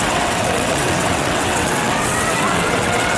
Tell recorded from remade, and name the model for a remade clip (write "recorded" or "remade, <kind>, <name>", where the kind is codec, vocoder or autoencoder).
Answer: remade, vocoder, WaveNeXt